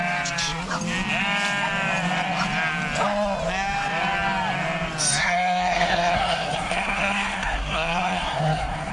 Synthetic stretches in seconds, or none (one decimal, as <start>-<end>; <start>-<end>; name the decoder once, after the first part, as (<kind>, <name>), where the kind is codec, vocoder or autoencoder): 5.2-8.9 (codec, SNAC)